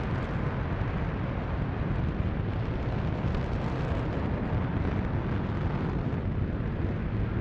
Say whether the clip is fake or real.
real